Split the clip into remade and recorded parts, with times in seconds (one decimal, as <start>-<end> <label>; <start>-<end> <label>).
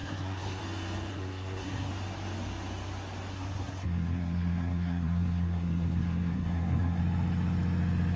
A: 0.0-0.6 remade; 0.6-1.1 recorded; 1.1-1.9 remade; 1.9-3.3 recorded; 3.3-7.0 remade; 7.0-8.2 recorded